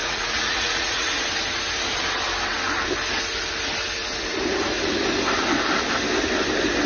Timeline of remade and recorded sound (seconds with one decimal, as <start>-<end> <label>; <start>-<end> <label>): 0.0-1.1 remade; 1.1-6.9 recorded